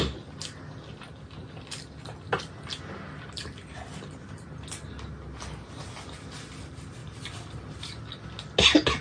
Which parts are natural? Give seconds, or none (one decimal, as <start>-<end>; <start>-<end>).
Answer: 0.0-7.0; 8.0-9.0